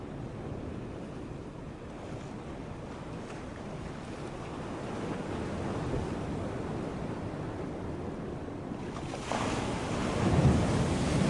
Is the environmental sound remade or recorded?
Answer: recorded